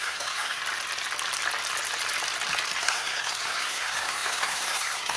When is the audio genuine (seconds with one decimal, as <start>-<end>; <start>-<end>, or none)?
0.6-2.8